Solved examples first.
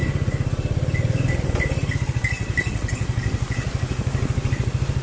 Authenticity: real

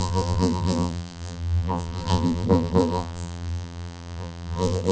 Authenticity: fake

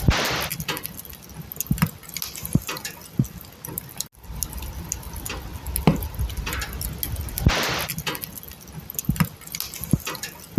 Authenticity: real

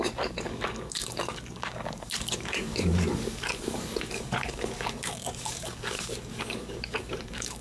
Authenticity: fake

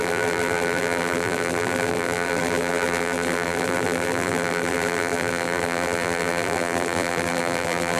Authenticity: fake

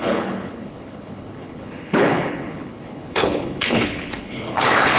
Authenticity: fake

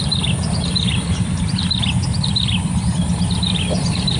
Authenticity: real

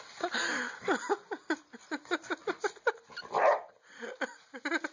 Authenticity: real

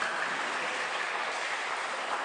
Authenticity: real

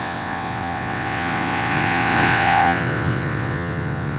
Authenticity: fake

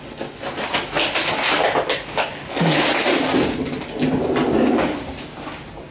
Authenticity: real